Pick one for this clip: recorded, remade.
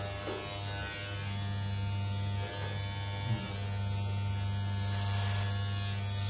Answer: recorded